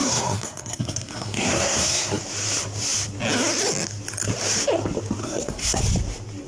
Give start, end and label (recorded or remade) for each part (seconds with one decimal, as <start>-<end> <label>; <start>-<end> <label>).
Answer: 0.0-2.2 remade; 2.2-5.2 recorded; 5.2-5.8 remade; 5.8-6.5 recorded